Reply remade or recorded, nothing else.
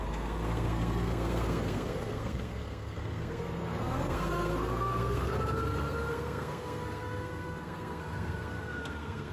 remade